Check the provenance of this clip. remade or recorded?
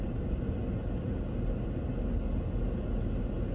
recorded